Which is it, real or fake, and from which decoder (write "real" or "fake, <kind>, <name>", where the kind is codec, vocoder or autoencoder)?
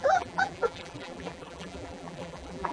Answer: fake, vocoder, BigVGAN v2